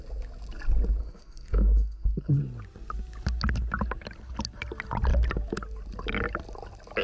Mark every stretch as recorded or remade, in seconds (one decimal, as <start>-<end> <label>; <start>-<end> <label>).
0.0-1.0 recorded; 1.0-2.3 remade; 2.3-7.0 recorded